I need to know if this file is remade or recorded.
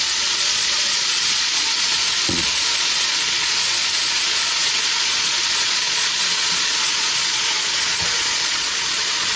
remade